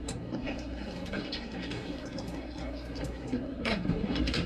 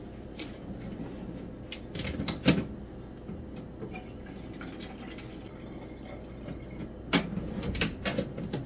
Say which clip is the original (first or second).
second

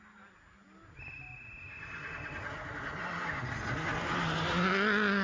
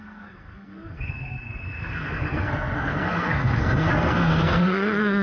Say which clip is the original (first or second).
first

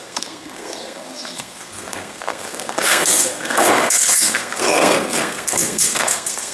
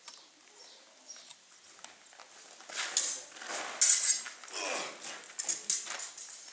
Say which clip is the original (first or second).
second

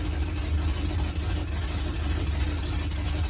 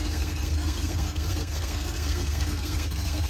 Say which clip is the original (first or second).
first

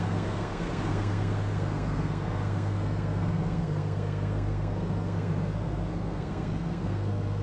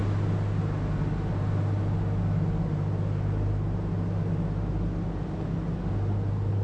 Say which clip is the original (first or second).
second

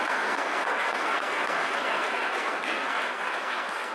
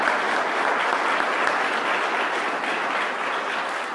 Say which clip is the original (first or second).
second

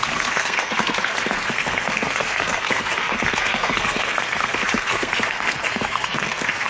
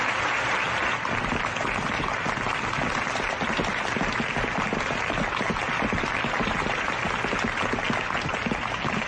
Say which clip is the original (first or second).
second